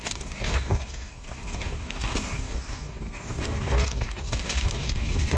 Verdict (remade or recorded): remade